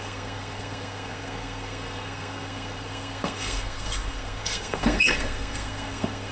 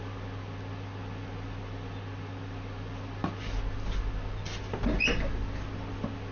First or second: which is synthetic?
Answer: first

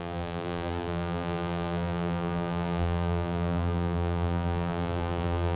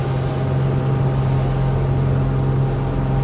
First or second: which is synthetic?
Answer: first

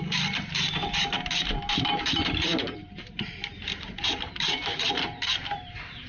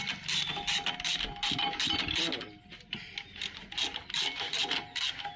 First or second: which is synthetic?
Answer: first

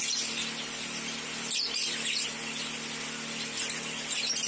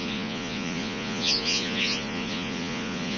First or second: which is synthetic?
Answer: second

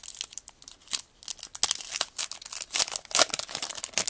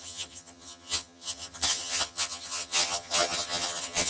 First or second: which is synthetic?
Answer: second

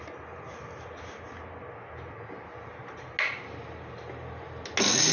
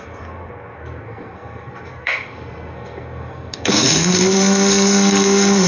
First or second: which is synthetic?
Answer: second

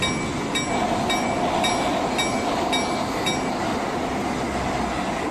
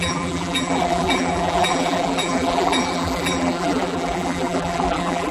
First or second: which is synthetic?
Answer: second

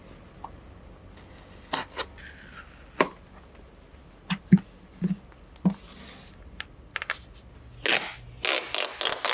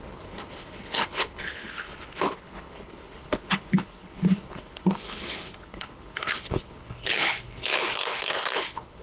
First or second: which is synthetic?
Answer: second